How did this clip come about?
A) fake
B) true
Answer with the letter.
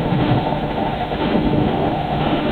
A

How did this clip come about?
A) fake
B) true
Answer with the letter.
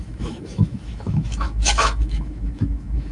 A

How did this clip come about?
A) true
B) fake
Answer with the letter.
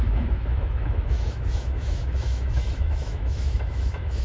B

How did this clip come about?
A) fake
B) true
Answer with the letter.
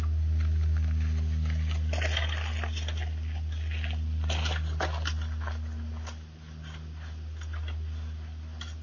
B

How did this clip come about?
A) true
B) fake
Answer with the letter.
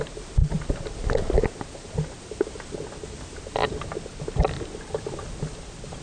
A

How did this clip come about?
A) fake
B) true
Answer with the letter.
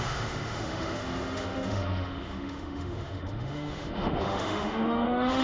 A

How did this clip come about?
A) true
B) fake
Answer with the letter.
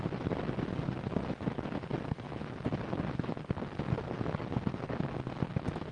A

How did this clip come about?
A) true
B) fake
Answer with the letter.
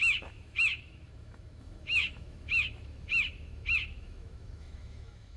B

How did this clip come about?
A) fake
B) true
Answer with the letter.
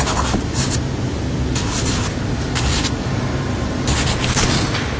B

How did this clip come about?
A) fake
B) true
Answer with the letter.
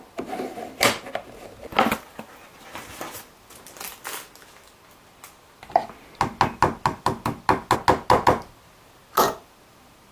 B